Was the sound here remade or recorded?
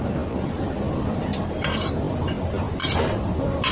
recorded